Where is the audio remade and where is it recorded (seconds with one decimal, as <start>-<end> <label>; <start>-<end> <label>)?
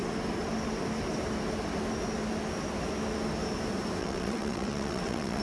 0.0-4.0 recorded; 4.0-5.4 remade